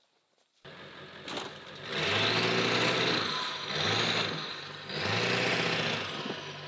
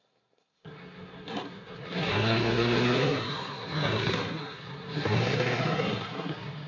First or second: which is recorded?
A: first